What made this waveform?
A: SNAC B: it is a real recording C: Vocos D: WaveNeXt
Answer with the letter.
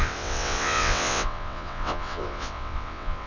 D